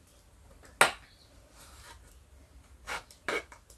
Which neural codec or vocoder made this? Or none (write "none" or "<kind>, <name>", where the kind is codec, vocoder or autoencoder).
none